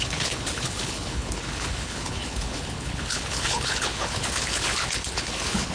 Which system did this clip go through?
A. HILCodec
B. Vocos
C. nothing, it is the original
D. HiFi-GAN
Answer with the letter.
A